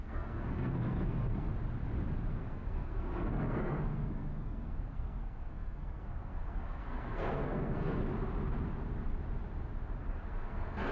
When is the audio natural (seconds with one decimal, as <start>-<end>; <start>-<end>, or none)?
1.5-2.3; 8.0-10.0